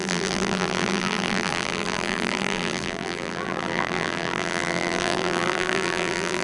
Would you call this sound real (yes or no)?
no